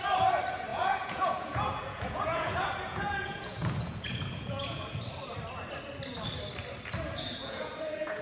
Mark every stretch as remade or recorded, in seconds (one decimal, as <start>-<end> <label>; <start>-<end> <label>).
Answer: 0.0-0.7 recorded; 0.7-5.0 remade; 5.0-7.4 recorded; 7.4-8.2 remade